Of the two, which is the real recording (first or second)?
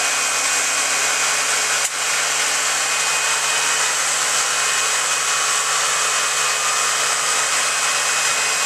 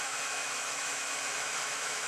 first